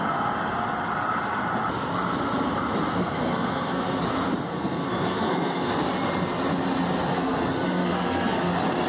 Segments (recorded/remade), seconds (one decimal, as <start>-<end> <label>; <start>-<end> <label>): 0.0-3.0 recorded; 3.0-4.0 remade; 4.0-4.5 recorded; 4.5-5.7 remade; 5.7-7.1 recorded; 7.1-8.5 remade; 8.5-8.9 recorded